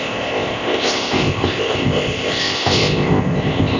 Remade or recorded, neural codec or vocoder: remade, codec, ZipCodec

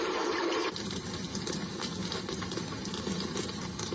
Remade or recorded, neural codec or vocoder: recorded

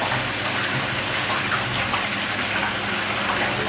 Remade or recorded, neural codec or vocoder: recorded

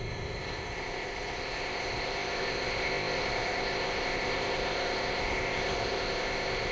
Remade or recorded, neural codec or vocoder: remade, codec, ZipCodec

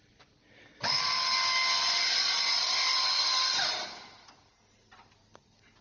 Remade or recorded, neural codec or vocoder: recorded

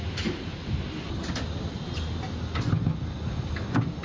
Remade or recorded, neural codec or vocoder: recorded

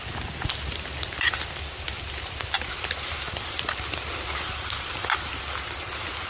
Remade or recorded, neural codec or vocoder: recorded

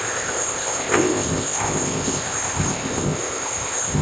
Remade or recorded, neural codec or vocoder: remade, codec, ZipCodec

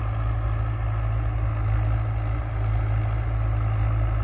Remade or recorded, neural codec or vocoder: recorded